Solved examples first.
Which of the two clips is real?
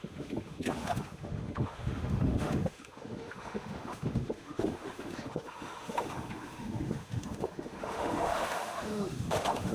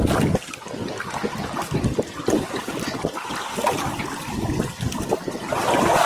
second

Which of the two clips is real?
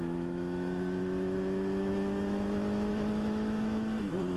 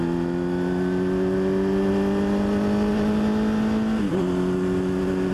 second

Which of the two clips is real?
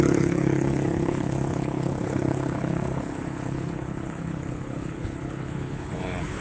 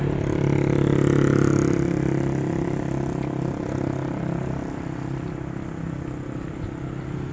second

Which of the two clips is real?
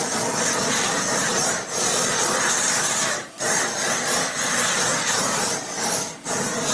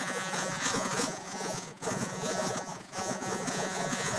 first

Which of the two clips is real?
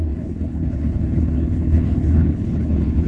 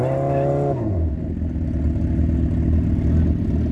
second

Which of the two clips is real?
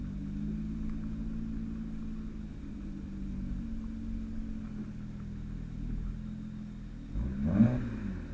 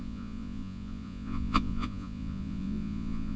first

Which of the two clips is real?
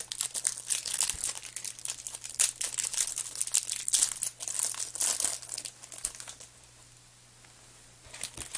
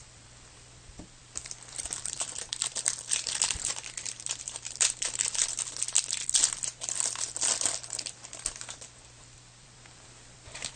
first